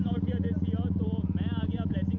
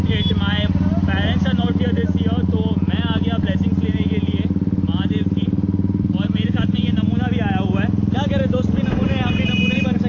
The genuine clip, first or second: second